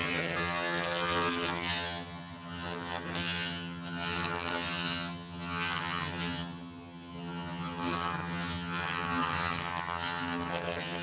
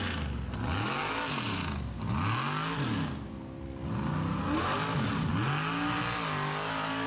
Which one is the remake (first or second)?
first